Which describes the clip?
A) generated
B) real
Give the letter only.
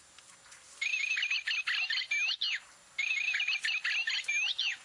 B